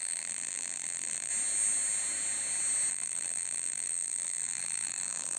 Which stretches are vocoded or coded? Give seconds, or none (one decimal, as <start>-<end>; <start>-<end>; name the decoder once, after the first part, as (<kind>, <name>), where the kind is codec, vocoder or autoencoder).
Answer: 0.0-1.3 (vocoder, BigVGAN v2); 2.9-5.4